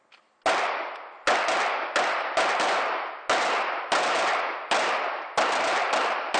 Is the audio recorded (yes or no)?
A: yes